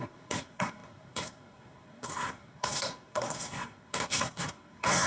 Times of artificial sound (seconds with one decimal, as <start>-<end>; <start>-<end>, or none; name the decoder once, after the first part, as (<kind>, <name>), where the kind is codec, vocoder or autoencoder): 0.0-5.1 (codec, SNAC)

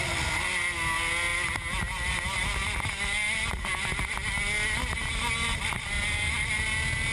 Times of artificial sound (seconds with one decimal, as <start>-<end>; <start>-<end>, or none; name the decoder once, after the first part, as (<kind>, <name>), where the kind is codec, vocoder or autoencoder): none